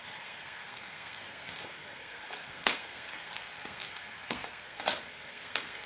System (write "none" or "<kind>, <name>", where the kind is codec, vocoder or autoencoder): codec, SNAC